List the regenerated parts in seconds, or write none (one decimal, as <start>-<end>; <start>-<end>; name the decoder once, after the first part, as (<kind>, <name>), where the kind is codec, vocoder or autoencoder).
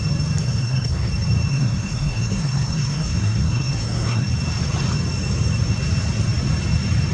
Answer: 0.4-1.1 (codec, SNAC); 1.5-4.3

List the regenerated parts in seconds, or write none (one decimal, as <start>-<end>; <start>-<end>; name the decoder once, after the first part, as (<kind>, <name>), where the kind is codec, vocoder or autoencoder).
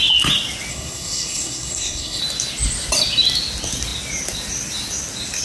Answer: 0.7-2.2 (codec, SNAC)